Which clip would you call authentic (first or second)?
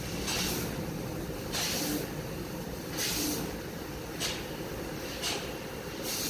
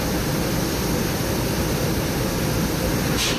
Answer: first